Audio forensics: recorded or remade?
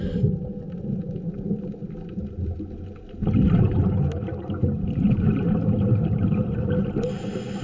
recorded